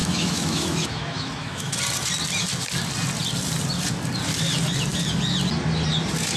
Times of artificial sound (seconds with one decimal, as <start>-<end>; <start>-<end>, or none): 0.0-1.8